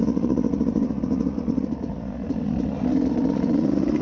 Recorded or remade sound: remade